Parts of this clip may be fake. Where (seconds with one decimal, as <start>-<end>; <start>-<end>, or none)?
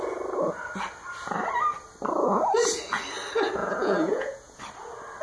3.6-4.6